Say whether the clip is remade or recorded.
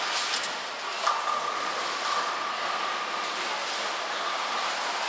recorded